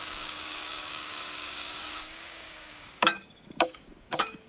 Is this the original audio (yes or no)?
no